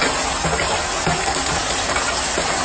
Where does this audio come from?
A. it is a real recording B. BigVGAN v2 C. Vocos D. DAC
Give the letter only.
A